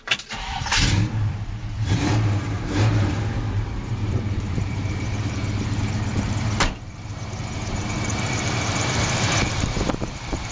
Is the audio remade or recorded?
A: remade